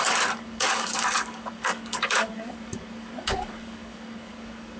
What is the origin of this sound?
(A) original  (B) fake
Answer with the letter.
B